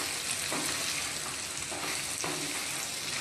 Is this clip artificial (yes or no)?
no